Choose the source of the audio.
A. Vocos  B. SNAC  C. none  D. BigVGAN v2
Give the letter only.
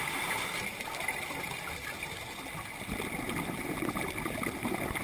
D